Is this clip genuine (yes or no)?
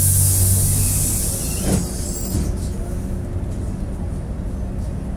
yes